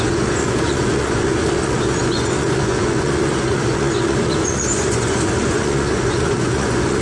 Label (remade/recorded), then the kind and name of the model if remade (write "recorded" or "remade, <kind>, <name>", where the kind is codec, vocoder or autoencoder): remade, vocoder, Vocos